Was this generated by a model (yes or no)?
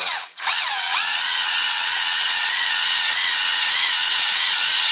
yes